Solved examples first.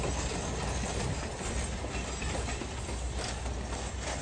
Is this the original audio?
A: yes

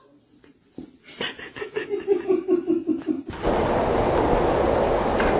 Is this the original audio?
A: yes